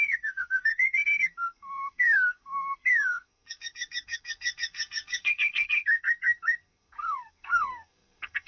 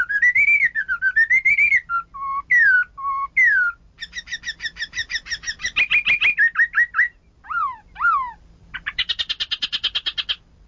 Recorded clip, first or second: second